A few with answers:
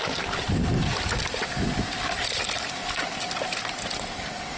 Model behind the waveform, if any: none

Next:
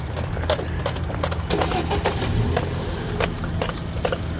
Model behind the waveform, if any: none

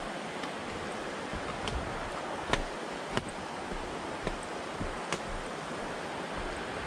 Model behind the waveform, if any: none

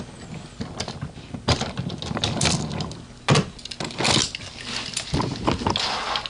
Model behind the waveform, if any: none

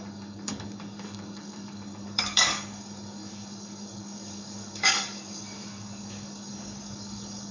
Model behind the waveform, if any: codec, DAC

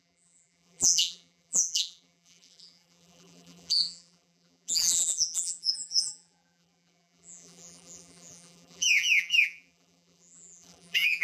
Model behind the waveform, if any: vocoder, BigVGAN v2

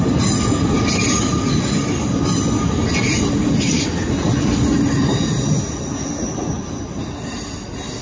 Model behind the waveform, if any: none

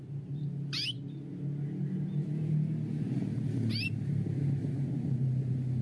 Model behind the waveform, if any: none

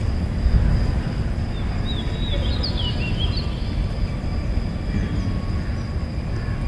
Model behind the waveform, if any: none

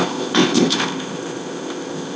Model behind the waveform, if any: codec, ZipCodec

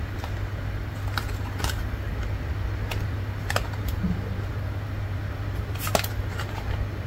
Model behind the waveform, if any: none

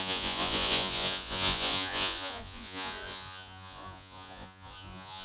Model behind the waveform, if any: vocoder, Vocos